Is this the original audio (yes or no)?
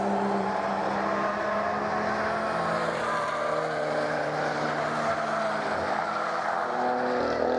yes